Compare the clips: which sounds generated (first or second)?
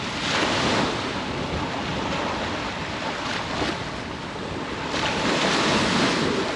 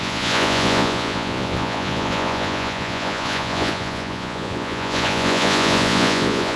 second